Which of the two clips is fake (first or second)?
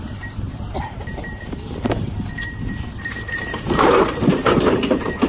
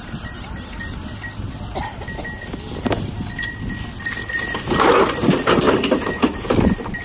first